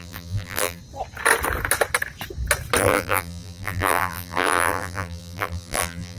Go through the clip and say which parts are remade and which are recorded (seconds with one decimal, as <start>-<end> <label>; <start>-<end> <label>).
0.0-0.8 remade; 0.8-2.8 recorded; 2.8-6.2 remade